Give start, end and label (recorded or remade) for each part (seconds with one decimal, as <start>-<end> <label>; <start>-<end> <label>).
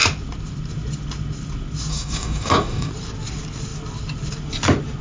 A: 0.0-1.9 recorded; 1.9-2.9 remade; 2.9-5.0 recorded